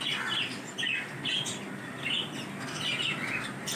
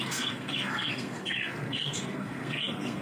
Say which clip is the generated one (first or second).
second